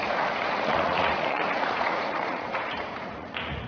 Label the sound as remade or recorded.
remade